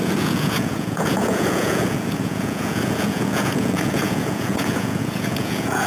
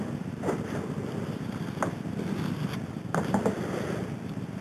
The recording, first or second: second